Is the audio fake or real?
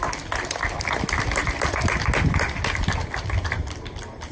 real